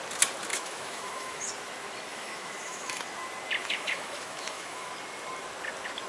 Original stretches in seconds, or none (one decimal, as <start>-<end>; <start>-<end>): 0.0-0.5; 1.5-2.1; 3.0-3.6; 4.9-6.1